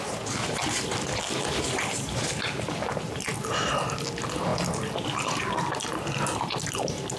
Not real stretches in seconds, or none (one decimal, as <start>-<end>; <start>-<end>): none